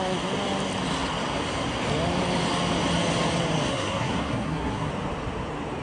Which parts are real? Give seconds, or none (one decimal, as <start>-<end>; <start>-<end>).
0.0-3.7; 4.9-5.8